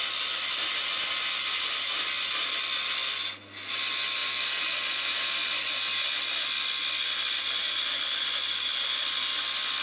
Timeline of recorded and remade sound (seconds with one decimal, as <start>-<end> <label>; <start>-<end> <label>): 0.0-9.8 recorded

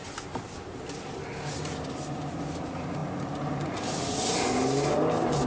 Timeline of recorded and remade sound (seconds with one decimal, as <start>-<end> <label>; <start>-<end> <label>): 0.0-5.5 recorded

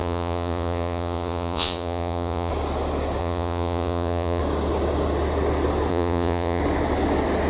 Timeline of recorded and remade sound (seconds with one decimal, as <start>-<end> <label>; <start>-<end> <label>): 0.0-2.5 remade; 2.5-3.2 recorded; 3.2-4.4 remade; 4.4-5.9 recorded; 5.9-6.6 remade; 6.6-7.5 recorded

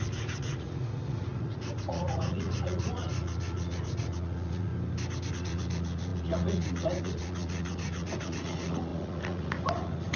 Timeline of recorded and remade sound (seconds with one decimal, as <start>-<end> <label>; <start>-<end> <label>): 0.0-4.7 remade; 4.7-5.3 recorded; 5.3-10.2 remade